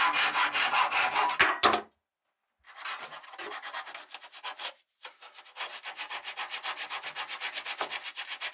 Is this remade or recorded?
recorded